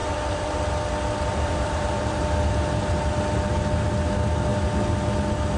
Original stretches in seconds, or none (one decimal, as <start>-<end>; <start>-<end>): 0.6-1.3; 2.2-5.6